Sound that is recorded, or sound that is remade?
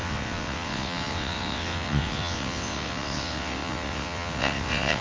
remade